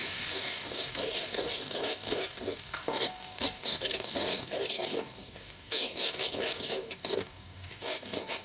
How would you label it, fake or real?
fake